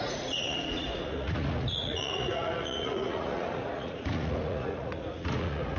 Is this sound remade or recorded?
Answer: remade